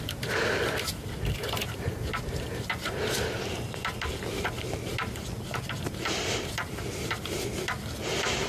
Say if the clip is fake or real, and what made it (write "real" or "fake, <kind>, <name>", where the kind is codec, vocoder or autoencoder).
real